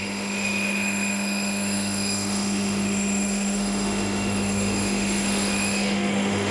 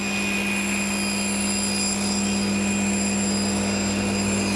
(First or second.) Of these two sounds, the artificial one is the first